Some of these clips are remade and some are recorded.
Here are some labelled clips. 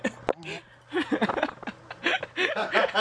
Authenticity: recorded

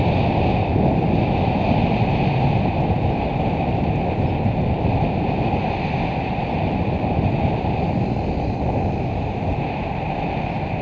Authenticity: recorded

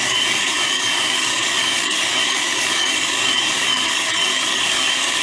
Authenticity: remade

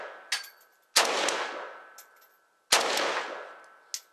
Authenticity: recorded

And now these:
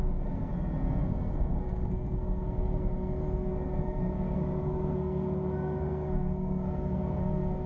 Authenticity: remade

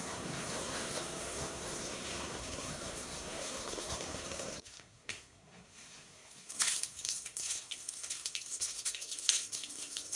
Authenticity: remade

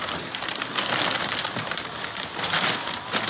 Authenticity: recorded